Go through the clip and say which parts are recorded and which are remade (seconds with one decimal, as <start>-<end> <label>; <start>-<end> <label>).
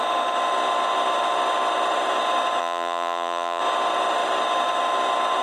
0.0-2.6 recorded; 2.6-3.6 remade; 3.6-5.4 recorded